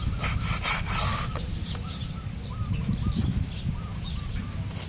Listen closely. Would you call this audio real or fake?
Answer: real